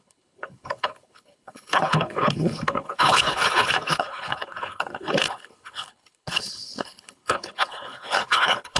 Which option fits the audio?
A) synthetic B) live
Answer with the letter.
A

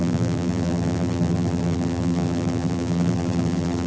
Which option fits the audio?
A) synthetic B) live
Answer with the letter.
A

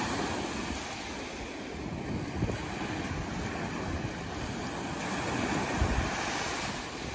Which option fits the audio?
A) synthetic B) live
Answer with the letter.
B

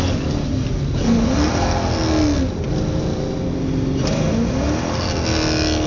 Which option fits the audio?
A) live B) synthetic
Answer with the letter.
A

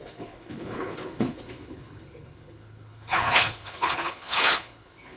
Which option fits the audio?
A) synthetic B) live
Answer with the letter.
A